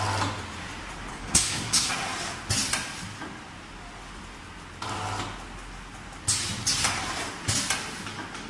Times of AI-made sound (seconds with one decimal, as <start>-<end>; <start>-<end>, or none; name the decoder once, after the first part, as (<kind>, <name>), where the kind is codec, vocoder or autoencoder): 1.1-1.9 (codec, SNAC)